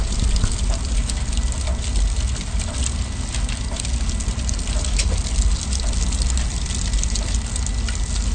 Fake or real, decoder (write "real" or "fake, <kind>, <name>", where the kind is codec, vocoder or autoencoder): real